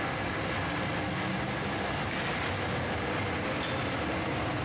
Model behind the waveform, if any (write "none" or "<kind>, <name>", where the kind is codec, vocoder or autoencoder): none